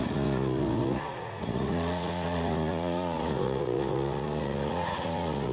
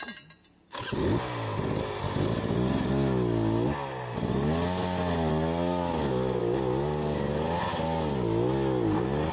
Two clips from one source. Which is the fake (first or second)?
first